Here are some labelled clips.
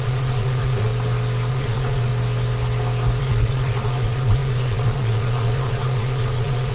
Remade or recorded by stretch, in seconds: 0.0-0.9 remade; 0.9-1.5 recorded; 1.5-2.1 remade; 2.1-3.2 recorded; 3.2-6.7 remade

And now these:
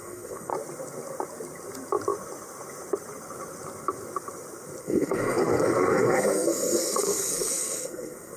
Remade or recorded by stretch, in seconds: 0.0-0.5 remade; 0.5-4.8 recorded; 4.8-8.4 remade

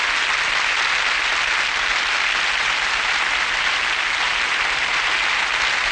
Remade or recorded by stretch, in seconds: 0.0-5.9 recorded